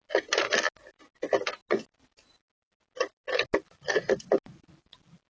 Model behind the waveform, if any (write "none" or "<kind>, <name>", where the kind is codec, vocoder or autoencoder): none